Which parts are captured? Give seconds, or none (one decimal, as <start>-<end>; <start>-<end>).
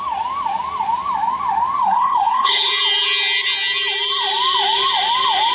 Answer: 0.0-1.8; 2.7-5.5